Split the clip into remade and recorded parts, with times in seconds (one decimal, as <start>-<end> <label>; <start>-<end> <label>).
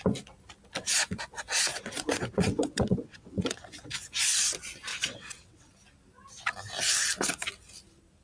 0.0-1.7 recorded; 1.7-3.9 remade; 3.9-4.9 recorded; 4.9-5.7 remade; 5.7-8.2 recorded